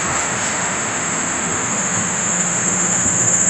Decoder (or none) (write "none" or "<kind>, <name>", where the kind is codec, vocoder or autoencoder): autoencoder, DAC-VAE